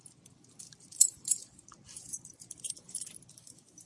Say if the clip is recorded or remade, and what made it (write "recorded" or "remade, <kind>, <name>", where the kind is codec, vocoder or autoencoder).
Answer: remade, vocoder, BigVGAN v2